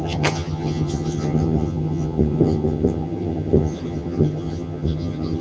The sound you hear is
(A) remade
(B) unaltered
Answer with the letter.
A